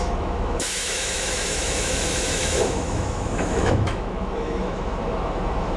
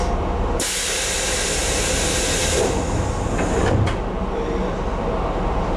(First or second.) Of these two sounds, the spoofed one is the first